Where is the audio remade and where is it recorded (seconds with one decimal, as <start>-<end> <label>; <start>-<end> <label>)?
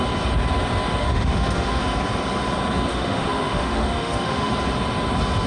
0.0-1.0 recorded; 1.0-1.8 remade; 1.8-2.9 recorded; 2.9-4.5 remade; 4.5-5.5 recorded